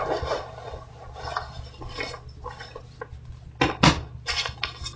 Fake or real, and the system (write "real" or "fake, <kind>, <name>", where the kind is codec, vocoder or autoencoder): real